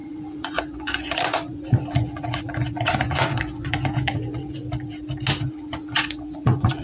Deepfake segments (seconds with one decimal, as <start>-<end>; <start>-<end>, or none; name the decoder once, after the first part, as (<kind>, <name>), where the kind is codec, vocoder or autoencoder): 0.0-4.6 (vocoder, Vocos); 5.4-6.8